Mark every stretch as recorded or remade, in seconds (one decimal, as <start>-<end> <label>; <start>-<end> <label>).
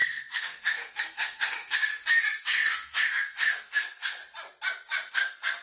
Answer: 0.0-1.9 remade; 1.9-2.4 recorded; 2.4-4.2 remade; 4.2-5.1 recorded; 5.1-5.6 remade